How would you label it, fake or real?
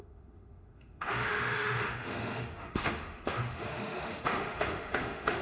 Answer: fake